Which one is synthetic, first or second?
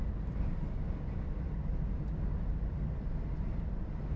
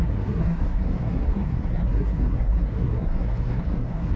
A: second